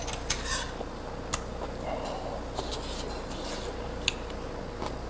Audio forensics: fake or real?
real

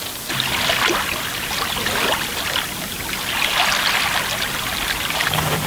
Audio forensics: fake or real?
real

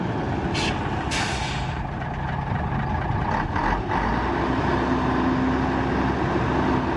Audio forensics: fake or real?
real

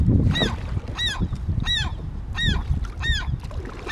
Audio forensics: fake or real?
real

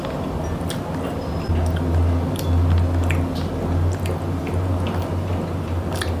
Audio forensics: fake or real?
real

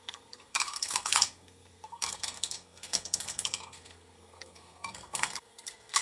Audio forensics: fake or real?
fake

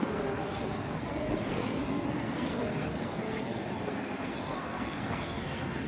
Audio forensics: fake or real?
fake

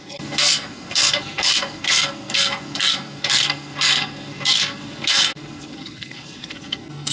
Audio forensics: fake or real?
fake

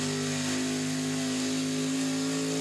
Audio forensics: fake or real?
real